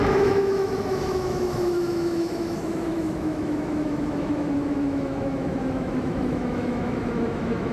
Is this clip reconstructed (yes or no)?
yes